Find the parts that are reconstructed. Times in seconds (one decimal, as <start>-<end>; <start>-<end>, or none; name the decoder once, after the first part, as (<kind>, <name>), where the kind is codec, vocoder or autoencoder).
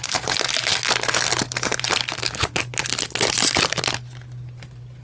none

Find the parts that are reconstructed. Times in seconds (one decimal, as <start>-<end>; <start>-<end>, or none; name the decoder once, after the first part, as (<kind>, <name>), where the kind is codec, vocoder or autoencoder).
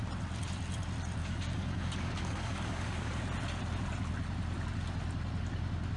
1.2-3.1 (codec, DAC)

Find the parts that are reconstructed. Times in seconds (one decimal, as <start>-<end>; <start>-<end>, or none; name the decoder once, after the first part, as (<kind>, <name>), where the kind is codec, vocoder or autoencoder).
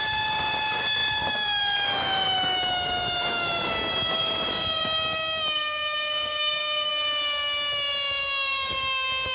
0.0-6.9 (codec, DAC); 8.2-9.3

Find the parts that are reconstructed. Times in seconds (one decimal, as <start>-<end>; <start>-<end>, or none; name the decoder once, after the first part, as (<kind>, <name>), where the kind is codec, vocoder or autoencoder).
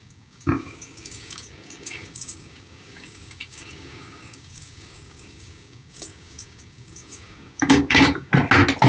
0.0-8.3 (codec, DAC)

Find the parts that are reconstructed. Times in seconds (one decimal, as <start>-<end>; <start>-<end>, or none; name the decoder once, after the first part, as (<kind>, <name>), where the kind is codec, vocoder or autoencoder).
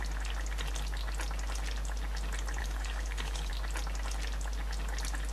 2.6-3.5 (codec, DAC)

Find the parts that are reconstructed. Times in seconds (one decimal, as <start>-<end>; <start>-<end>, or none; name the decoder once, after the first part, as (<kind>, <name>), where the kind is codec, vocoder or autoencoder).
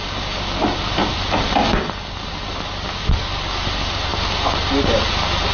none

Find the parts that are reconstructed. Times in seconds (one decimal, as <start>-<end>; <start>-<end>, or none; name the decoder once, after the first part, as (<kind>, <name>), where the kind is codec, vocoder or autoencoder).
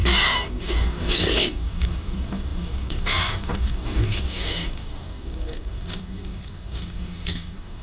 0.0-7.8 (codec, DAC)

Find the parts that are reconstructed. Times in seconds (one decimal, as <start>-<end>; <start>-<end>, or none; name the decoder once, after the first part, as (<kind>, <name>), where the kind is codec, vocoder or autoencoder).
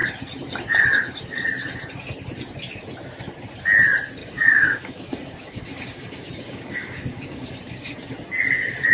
4.2-7.9 (codec, DAC)